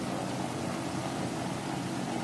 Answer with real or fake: real